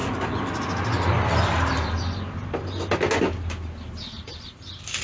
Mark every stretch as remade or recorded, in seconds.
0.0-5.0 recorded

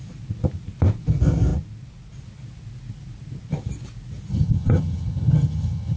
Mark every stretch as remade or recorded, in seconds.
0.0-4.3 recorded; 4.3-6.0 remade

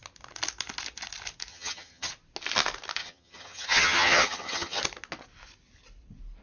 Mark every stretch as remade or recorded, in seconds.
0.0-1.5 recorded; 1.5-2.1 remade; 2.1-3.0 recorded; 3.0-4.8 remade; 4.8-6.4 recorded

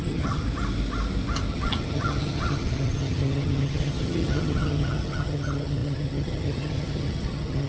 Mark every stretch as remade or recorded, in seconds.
0.0-0.4 remade; 0.4-1.5 recorded; 1.5-7.7 remade

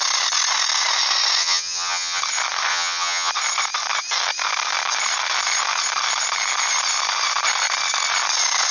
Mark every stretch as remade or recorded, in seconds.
0.0-1.4 recorded; 1.4-2.2 remade; 2.2-2.7 recorded; 2.7-3.3 remade; 3.3-8.7 recorded